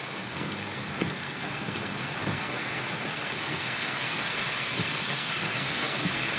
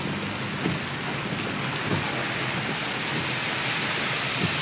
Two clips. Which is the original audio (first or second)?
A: second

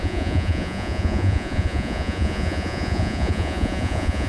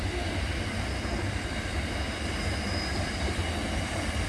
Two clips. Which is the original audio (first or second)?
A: second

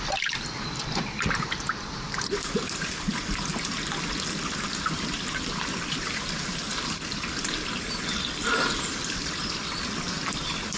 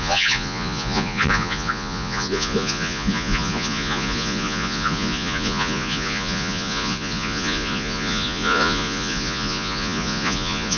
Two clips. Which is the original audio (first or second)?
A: first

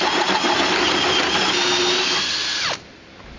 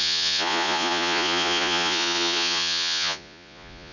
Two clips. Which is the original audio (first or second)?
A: first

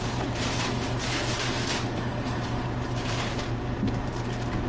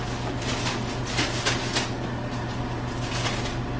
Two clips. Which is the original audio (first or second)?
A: second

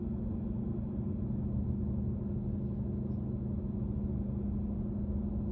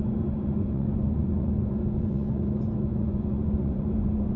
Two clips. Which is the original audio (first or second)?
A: first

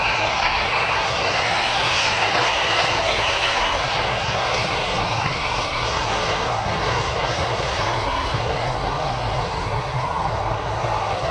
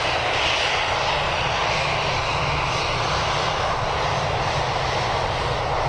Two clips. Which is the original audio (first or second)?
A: second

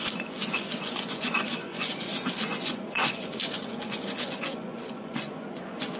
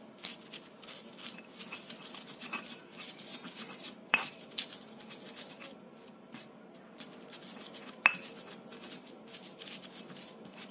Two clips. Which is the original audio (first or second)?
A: second